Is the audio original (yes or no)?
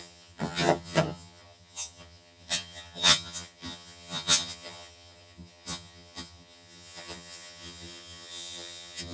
no